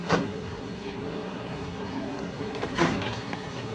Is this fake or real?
fake